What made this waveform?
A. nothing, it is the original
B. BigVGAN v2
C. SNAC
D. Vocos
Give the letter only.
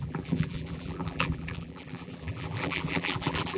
B